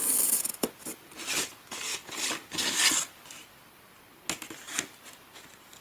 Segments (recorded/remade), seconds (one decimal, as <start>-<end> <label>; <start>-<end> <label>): 0.0-5.8 recorded